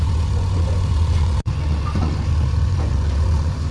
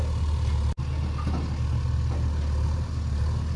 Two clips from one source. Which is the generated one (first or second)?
first